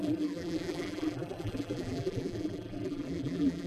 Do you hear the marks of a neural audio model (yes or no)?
yes